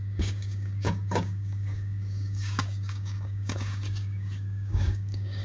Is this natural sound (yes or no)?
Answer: no